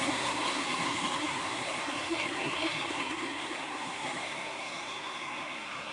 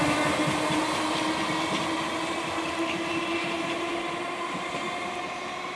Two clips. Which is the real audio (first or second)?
second